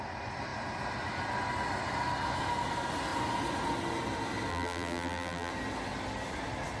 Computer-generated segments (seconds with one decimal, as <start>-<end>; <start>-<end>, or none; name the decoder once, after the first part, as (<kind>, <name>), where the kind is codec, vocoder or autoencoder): 4.5-5.5 (vocoder, BigVGAN v2)